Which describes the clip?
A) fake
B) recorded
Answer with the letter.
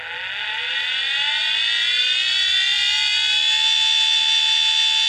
B